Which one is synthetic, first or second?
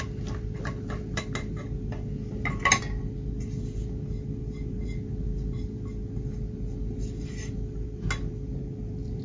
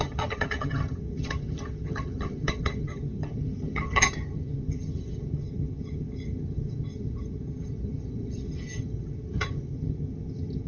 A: second